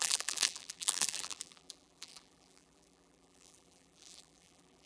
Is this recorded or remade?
remade